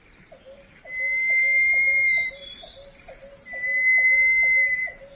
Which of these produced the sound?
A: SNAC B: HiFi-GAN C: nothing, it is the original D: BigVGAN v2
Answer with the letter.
C